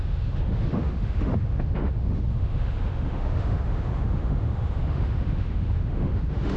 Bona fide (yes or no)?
no